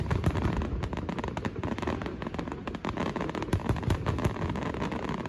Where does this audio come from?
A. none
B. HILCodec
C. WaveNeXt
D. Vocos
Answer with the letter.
A